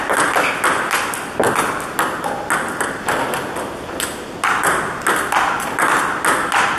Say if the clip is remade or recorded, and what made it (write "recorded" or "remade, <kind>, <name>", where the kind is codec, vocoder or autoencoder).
recorded